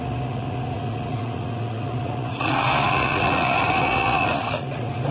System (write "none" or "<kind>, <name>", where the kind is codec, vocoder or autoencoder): vocoder, Vocos